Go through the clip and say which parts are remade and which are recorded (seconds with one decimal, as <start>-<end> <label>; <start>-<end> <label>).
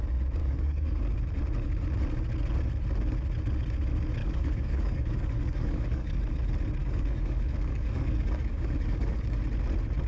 0.0-0.4 recorded; 0.4-1.0 remade; 1.0-4.2 recorded; 4.2-6.2 remade; 6.2-6.8 recorded; 6.8-9.4 remade; 9.4-10.1 recorded